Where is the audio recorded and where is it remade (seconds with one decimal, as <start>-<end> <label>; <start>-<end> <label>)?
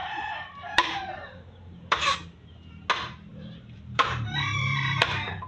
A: 0.0-2.0 remade; 2.0-3.3 recorded; 3.3-5.5 remade